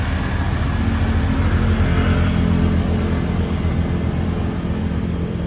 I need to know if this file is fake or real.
real